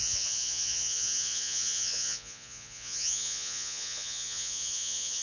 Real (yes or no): no